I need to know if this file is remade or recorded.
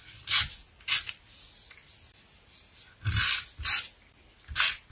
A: recorded